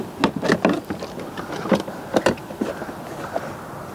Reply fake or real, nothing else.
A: real